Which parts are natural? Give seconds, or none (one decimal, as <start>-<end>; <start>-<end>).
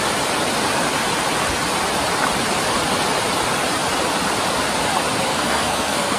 0.0-5.3